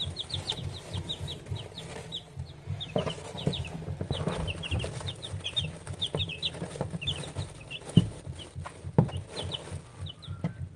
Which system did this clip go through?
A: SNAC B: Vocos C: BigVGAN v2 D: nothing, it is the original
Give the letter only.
D